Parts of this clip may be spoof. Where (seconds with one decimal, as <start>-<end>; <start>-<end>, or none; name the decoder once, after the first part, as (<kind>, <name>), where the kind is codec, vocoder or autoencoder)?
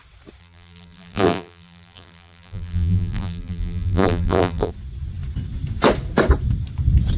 0.4-4.7 (vocoder, BigVGAN v2)